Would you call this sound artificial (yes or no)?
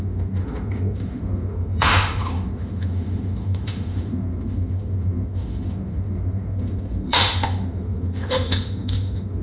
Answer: yes